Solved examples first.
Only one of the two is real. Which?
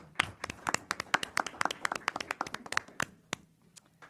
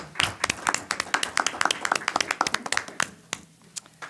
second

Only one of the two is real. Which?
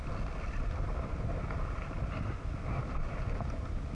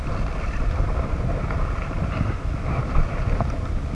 first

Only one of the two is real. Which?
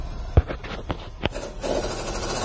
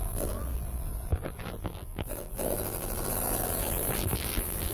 first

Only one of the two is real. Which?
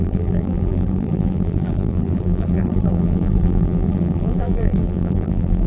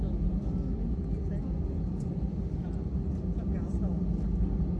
second